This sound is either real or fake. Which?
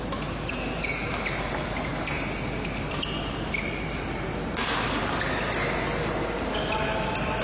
real